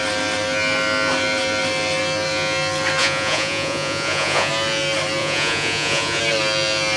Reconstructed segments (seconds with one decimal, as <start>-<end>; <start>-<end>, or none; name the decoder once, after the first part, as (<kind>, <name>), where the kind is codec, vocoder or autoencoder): 3.0-4.5 (vocoder, Vocos); 5.2-6.2